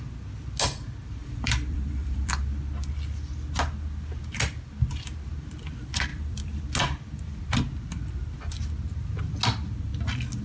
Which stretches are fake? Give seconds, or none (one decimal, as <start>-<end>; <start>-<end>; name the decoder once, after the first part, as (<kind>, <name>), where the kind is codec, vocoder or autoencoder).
1.2-2.3 (vocoder, BigVGAN v2); 6.1-6.6